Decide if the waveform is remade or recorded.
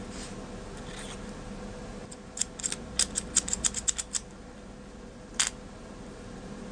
recorded